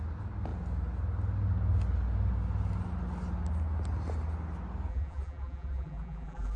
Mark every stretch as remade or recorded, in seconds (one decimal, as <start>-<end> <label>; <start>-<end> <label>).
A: 0.0-4.9 recorded; 4.9-6.6 remade